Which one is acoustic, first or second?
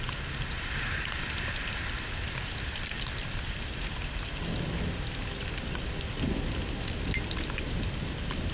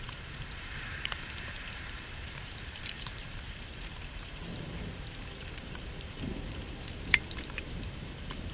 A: first